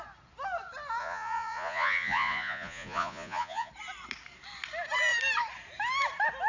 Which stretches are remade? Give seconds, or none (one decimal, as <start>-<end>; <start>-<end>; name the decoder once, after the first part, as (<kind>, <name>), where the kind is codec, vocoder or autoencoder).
1.0-3.7 (vocoder, Vocos)